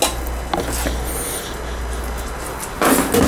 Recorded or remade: recorded